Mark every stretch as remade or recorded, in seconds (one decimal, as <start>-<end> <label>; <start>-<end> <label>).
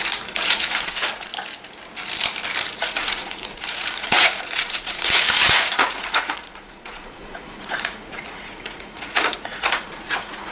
0.0-1.3 remade; 1.3-2.7 recorded; 2.7-10.5 remade